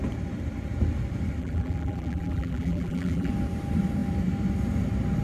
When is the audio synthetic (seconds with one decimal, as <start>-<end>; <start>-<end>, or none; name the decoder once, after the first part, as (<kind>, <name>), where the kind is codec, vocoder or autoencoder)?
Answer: 1.4-3.3 (vocoder, BigVGAN v2)